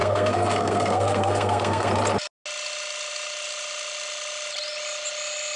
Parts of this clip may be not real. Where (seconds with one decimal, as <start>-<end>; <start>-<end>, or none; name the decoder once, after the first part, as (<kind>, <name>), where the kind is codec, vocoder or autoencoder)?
0.0-1.9 (codec, SNAC)